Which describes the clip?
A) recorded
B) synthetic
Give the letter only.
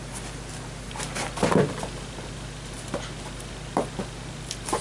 A